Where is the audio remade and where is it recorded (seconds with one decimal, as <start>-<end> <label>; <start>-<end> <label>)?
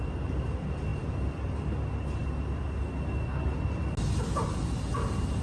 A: 0.0-0.9 recorded; 0.9-1.6 remade; 1.6-5.4 recorded